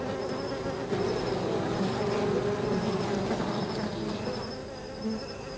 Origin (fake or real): real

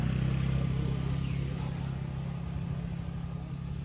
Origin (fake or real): real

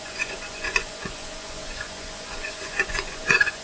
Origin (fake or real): fake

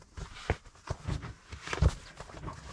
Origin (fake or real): real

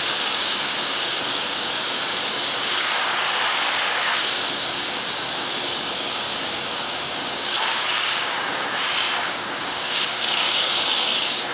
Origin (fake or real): fake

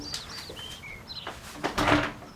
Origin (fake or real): real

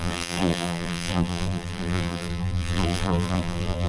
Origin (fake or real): fake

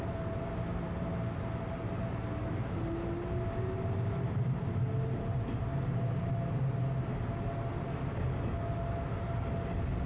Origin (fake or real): real